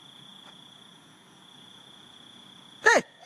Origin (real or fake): fake